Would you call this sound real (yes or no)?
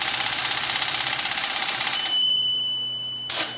no